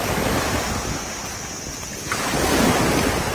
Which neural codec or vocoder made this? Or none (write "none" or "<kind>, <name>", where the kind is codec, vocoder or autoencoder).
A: none